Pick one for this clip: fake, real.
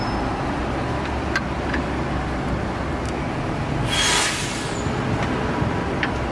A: real